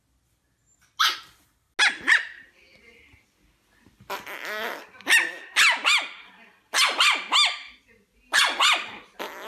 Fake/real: real